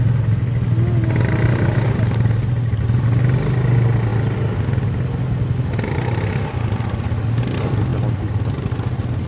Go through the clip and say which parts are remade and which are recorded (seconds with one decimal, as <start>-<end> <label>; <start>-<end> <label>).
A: 0.0-9.3 recorded